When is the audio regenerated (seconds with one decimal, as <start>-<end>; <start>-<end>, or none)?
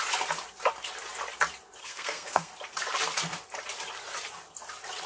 1.8-2.5